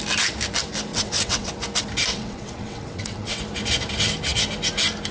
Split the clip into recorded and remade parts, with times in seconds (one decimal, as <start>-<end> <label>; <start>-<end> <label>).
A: 0.0-0.9 recorded; 0.9-1.5 remade; 1.5-2.1 recorded; 2.1-3.4 remade; 3.4-5.1 recorded